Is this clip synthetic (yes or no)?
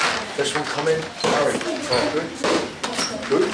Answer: no